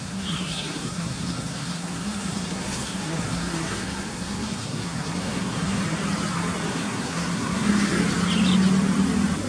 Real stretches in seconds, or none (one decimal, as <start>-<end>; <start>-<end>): 5.8-6.7; 8.0-9.5